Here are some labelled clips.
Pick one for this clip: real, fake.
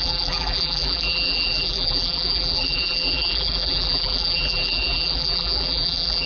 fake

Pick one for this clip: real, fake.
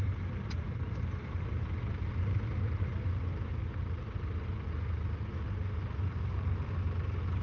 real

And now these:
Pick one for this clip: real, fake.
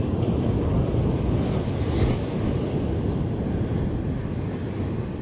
real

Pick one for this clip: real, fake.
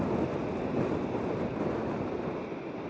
real